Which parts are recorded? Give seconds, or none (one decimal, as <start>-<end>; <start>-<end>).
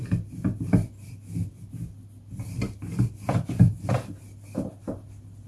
0.0-5.5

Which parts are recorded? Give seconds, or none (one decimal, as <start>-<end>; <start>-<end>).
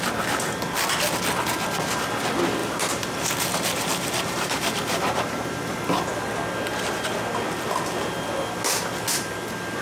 0.0-2.6; 5.9-9.8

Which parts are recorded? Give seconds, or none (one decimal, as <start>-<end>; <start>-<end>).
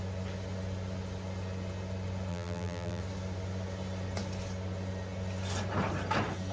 0.0-2.3; 3.0-6.5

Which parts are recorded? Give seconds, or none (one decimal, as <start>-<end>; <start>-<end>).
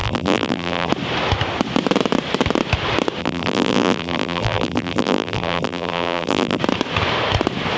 0.9-3.2; 6.6-7.8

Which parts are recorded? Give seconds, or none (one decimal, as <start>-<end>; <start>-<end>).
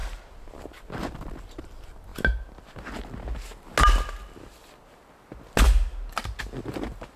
0.0-7.2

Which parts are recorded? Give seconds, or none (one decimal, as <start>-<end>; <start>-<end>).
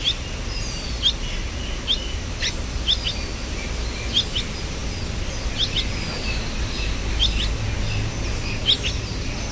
0.0-9.5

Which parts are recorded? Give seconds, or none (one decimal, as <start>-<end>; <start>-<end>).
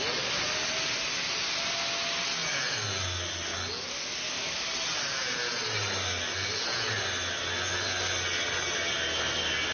0.0-9.7